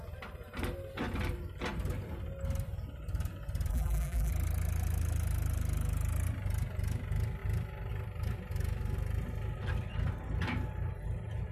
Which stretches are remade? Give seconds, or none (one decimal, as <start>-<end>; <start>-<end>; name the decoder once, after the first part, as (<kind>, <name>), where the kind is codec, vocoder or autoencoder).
3.7-4.3 (vocoder, BigVGAN v2)